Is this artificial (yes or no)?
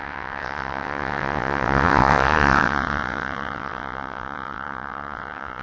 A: yes